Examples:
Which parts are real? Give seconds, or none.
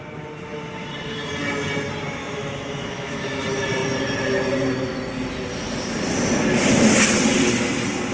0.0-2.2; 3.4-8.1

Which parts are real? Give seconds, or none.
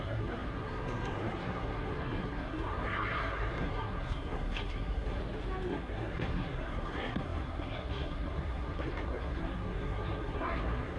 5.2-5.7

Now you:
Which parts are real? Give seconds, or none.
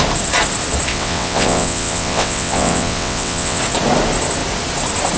0.0-0.9; 3.6-5.2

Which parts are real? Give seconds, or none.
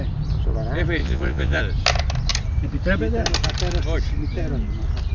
0.0-1.0; 1.6-5.1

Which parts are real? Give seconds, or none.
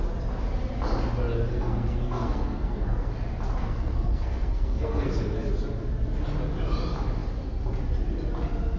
0.0-1.5; 3.1-3.6; 5.5-8.8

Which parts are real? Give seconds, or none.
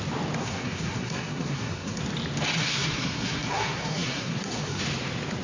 0.0-0.4; 2.0-2.6; 4.8-5.4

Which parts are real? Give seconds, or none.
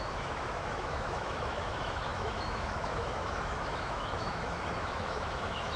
none